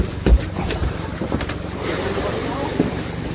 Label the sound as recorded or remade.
remade